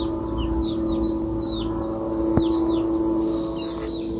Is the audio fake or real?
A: real